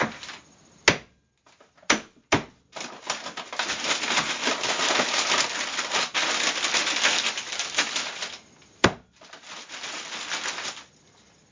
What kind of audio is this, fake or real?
real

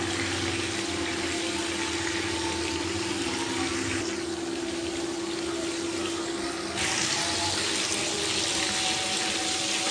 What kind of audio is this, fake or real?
real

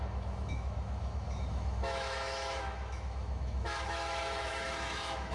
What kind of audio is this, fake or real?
fake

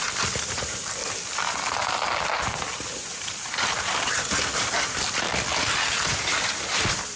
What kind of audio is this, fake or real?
real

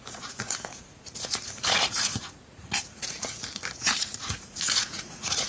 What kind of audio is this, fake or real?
fake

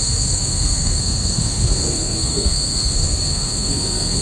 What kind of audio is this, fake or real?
fake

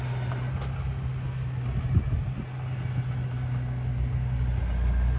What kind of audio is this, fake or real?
real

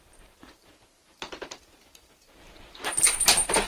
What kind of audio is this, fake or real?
fake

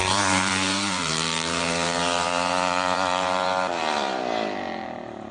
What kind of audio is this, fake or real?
fake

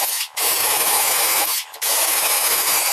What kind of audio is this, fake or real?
fake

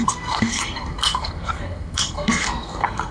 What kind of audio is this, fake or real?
fake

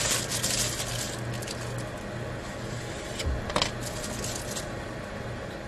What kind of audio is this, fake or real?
real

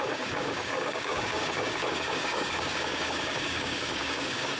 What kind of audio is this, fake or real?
fake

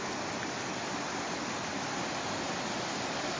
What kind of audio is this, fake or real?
real